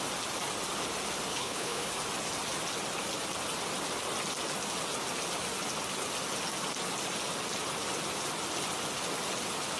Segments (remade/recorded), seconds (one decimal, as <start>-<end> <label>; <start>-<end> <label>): 0.0-1.3 recorded; 1.3-1.9 remade; 1.9-9.8 recorded